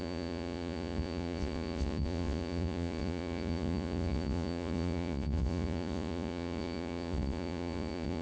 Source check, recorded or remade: remade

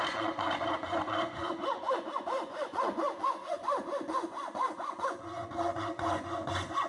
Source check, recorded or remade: remade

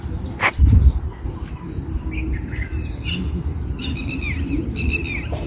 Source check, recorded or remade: recorded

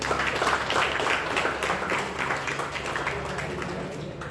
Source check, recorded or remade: recorded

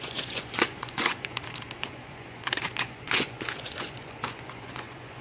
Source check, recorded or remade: remade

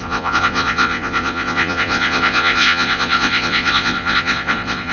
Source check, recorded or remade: remade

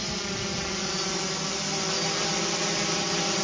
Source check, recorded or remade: recorded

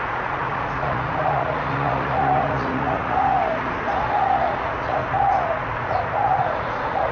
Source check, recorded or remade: remade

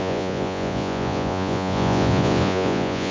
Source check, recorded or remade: remade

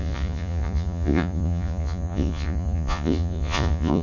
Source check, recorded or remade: remade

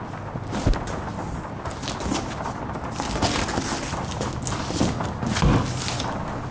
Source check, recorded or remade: recorded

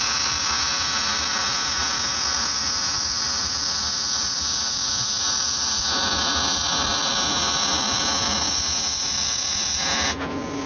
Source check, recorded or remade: recorded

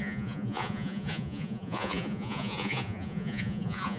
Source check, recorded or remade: remade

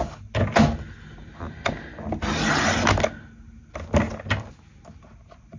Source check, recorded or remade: recorded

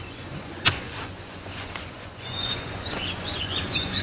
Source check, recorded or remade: remade